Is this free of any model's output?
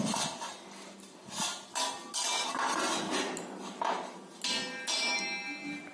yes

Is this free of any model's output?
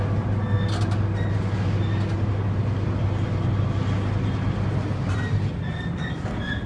yes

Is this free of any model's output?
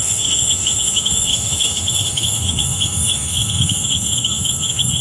no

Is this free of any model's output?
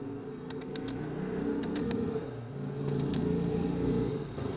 no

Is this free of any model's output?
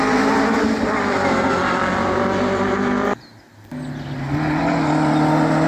yes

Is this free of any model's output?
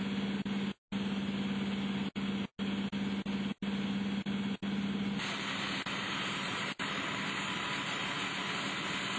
yes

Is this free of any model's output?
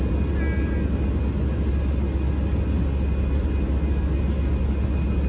yes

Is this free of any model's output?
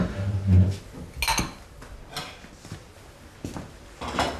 yes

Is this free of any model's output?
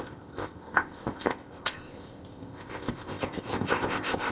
no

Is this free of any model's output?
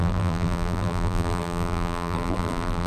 no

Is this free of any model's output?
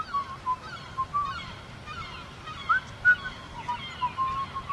yes